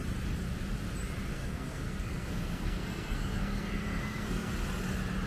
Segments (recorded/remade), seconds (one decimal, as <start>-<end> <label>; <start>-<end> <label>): 0.0-1.3 recorded; 1.3-4.5 remade; 4.5-5.3 recorded